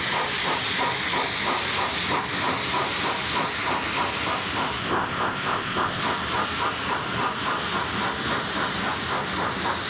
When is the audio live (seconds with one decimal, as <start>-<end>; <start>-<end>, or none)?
0.0-4.8; 6.0-9.9